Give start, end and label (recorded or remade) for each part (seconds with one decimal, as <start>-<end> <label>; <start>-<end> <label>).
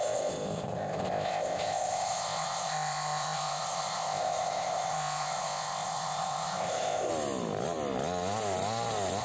0.0-7.1 remade; 7.1-9.2 recorded